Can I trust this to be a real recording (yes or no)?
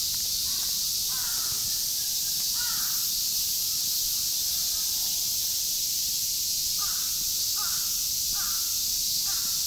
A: no